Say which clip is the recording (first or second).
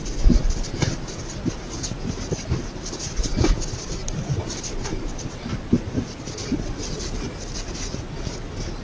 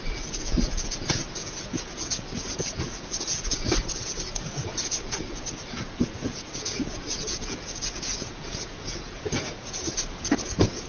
first